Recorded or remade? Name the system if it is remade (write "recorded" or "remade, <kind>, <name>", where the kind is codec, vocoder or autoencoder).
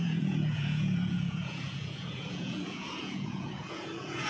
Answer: remade, vocoder, Vocos